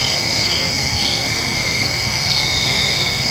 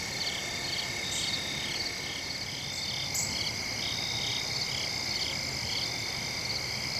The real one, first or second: second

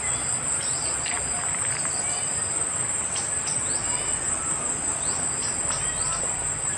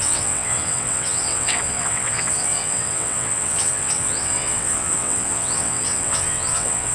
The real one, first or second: first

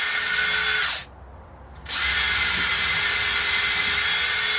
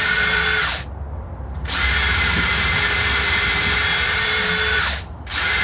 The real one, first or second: first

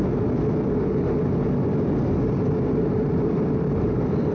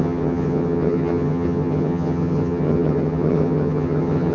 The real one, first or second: first